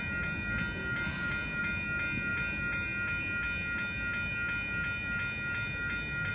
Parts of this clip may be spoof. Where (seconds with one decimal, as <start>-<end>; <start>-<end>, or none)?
none